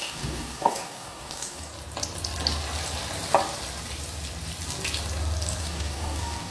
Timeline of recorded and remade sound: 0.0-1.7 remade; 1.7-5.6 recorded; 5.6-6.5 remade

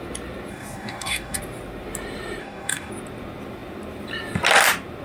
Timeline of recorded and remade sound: 0.0-0.5 recorded; 0.5-1.4 remade; 1.4-2.4 recorded; 2.4-2.9 remade; 2.9-5.0 recorded

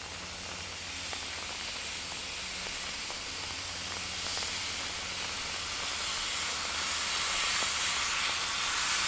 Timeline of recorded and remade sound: 0.0-9.1 recorded

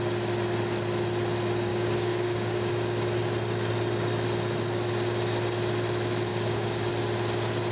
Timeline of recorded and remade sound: 0.0-1.7 recorded; 1.7-2.7 remade; 2.7-6.3 recorded; 6.3-6.9 remade; 6.9-7.7 recorded

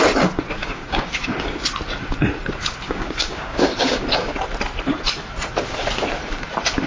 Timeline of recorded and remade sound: 0.0-0.6 recorded; 0.6-1.6 remade; 1.6-2.6 recorded; 2.6-4.3 remade; 4.3-6.9 recorded

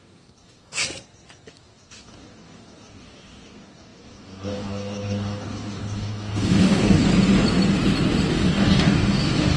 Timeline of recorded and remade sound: 0.0-0.8 remade; 0.8-1.5 recorded; 1.5-7.0 remade; 7.0-8.3 recorded; 8.3-9.6 remade

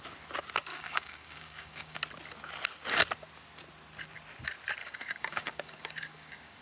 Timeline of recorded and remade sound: 0.0-0.7 recorded; 0.7-2.0 remade; 2.0-4.8 recorded; 4.8-6.6 remade

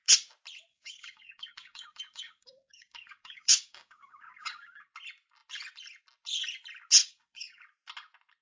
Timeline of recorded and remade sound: 0.0-0.7 recorded; 0.7-4.9 remade; 4.9-7.0 recorded; 7.0-7.6 remade; 7.6-8.4 recorded